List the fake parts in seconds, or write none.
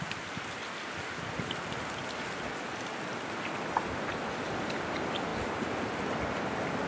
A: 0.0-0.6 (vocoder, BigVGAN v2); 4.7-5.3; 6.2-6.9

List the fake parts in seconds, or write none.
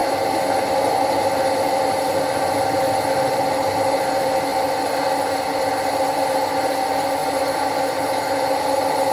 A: none